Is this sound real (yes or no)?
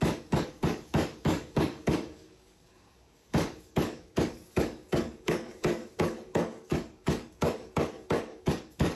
no